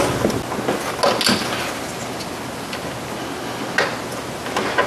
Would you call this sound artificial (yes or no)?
no